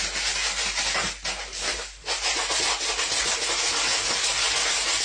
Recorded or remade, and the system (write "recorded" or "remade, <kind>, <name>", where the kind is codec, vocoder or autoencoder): recorded